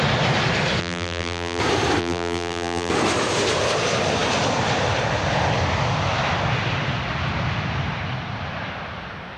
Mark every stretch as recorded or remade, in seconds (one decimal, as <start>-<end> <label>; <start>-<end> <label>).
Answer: 0.0-0.8 recorded; 0.8-1.6 remade; 1.6-2.0 recorded; 2.0-2.9 remade; 2.9-9.4 recorded